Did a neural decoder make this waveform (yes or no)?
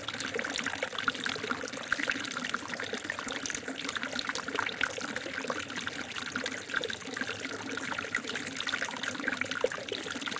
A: no